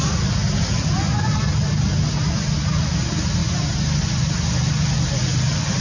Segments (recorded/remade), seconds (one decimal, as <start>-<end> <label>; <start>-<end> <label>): 0.0-5.8 recorded